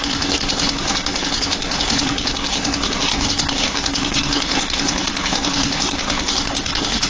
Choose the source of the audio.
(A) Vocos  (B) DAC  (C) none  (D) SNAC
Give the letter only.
D